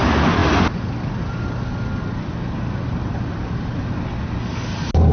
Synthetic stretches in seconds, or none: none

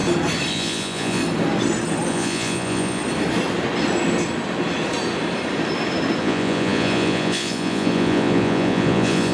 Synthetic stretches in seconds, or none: 0.5-1.2 (vocoder, Vocos); 2.1-3.0; 6.2-9.3

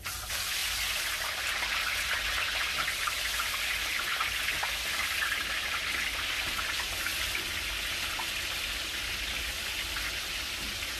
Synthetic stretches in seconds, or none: none

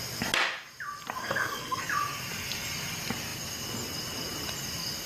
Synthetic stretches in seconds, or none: 1.2-1.8 (codec, SNAC)

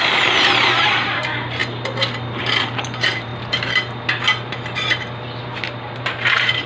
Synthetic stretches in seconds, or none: 0.0-1.6 (vocoder, BigVGAN v2); 2.4-3.3; 5.4-6.7

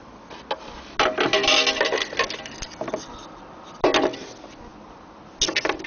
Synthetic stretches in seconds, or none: none

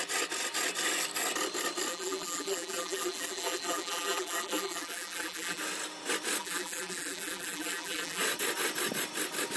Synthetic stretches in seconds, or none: 1.9-5.6 (vocoder, BigVGAN v2); 6.4-8.2